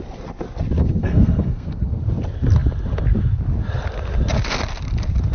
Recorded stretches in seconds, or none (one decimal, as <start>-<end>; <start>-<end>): 0.0-0.8; 2.0-5.3